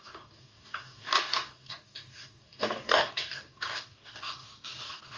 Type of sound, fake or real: fake